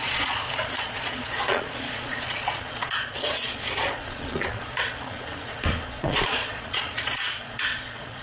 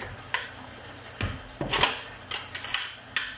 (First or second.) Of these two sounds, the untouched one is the second